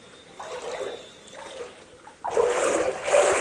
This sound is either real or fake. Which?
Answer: real